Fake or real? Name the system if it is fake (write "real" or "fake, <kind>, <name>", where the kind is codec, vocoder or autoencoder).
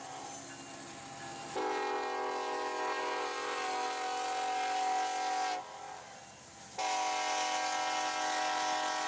real